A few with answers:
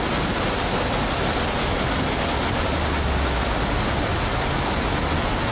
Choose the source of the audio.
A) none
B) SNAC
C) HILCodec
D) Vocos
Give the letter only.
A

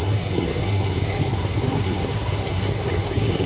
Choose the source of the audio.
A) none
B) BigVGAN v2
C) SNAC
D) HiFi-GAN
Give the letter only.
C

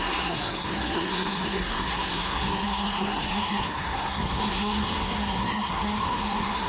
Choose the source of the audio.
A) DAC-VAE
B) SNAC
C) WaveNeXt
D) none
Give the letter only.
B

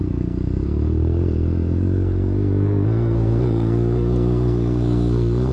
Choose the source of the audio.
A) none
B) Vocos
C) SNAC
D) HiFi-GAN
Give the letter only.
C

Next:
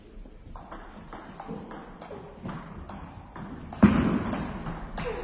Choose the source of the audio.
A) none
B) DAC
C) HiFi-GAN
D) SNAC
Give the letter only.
A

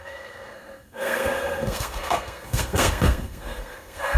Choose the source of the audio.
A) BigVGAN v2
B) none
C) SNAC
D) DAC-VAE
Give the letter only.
C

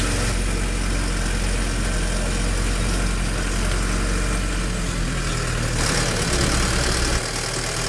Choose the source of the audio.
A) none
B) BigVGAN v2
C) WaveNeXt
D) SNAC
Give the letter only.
A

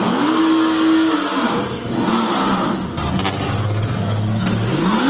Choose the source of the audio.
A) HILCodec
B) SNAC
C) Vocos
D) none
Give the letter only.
D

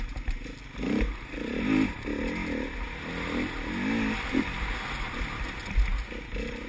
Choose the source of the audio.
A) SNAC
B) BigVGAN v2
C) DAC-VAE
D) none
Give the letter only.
D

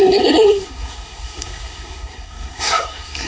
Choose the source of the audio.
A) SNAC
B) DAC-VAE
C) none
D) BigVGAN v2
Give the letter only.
A